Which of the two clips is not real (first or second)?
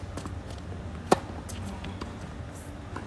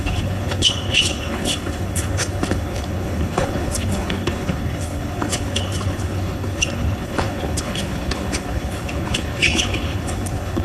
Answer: second